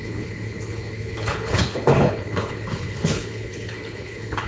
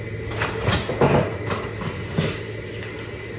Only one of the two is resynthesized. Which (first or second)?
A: first